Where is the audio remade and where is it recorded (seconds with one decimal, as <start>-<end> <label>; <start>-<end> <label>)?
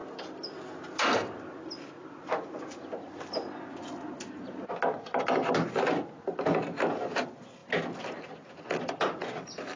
0.0-9.8 recorded